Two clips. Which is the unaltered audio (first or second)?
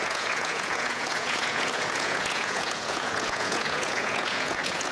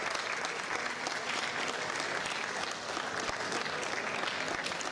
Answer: second